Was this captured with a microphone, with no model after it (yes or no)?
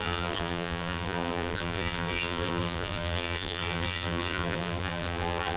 no